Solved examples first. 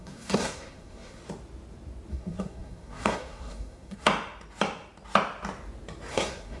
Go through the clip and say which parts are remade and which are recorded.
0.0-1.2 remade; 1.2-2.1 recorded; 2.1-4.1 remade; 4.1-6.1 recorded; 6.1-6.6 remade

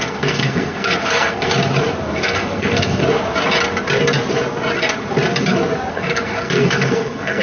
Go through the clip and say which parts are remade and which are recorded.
0.0-1.5 remade; 1.5-2.1 recorded; 2.1-3.0 remade; 3.0-5.9 recorded; 5.9-7.4 remade

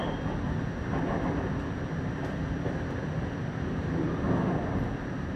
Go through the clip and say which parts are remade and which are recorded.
0.0-5.4 recorded

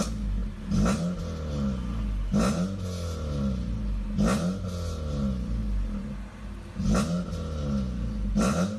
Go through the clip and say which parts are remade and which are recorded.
0.0-8.8 recorded

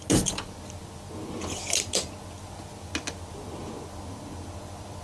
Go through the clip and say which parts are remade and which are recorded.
0.0-5.0 recorded

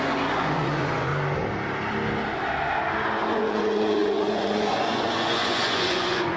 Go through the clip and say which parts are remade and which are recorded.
0.0-1.1 remade; 1.1-3.3 recorded; 3.3-6.4 remade